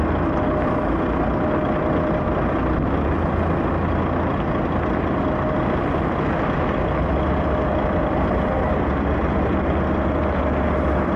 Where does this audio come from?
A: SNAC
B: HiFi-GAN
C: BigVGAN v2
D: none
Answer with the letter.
D